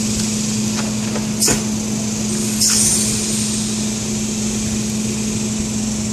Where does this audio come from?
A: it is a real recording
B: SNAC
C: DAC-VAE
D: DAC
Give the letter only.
A